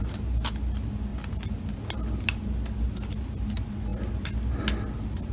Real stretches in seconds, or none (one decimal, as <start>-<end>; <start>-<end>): 0.0-5.3